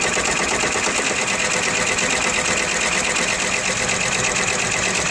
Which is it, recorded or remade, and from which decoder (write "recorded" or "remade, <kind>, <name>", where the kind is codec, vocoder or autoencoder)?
recorded